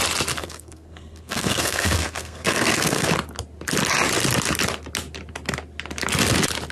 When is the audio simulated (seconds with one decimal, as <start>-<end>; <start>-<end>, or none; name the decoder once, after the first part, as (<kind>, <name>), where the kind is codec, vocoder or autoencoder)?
0.4-3.1 (codec, SNAC)